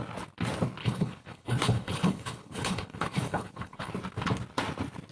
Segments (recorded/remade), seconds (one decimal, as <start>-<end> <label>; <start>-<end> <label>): 0.0-0.8 recorded; 0.8-3.9 remade; 3.9-5.1 recorded